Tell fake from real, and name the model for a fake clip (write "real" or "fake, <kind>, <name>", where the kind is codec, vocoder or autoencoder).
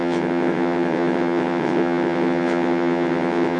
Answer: fake, vocoder, WaveNeXt